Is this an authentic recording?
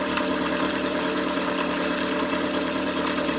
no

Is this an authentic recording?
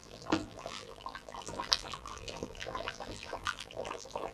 no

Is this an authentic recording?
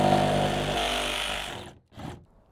yes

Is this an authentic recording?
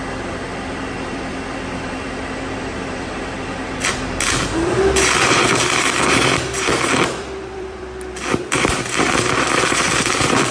no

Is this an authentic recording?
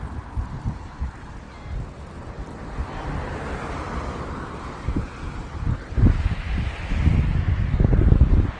yes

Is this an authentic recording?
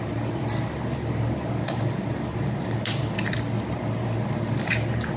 yes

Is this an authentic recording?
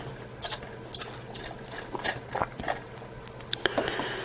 yes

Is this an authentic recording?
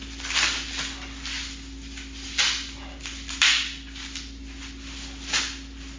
yes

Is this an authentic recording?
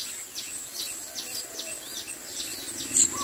yes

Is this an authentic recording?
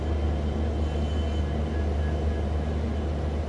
yes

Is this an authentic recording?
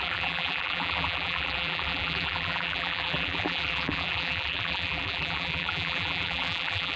no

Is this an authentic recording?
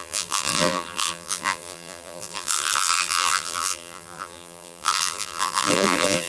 no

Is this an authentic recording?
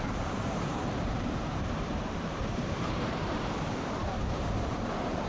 no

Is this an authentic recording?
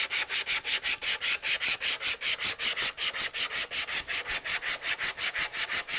yes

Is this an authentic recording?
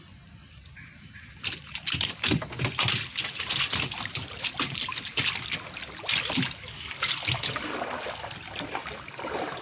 yes